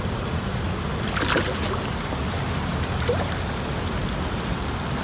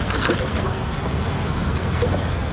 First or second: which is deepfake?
second